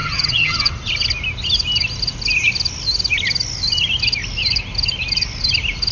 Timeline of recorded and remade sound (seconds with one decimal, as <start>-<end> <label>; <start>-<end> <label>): 0.0-0.7 remade; 0.7-5.9 recorded